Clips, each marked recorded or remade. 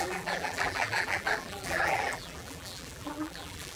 remade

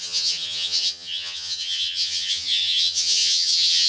remade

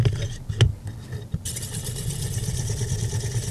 recorded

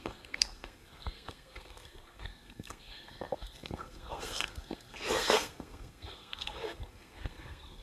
remade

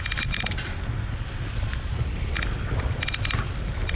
recorded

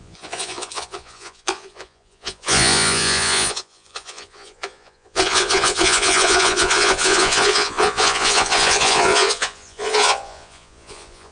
remade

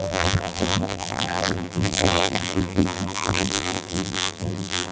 remade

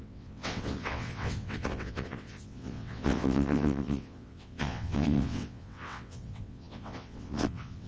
remade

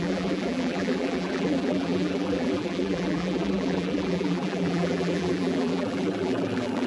remade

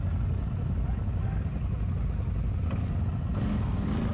recorded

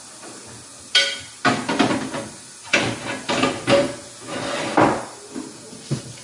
recorded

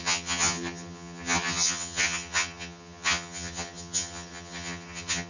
remade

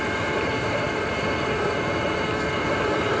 recorded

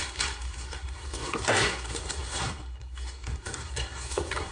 remade